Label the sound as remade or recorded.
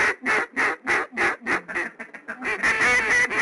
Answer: recorded